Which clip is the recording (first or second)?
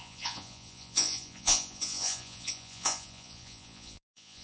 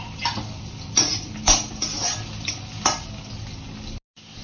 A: second